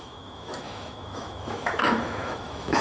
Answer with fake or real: fake